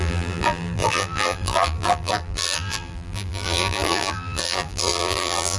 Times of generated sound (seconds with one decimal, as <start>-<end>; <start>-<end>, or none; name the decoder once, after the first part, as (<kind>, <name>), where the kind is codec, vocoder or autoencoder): 0.0-5.6 (vocoder, BigVGAN v2)